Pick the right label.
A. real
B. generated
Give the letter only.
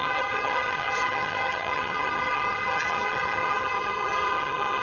B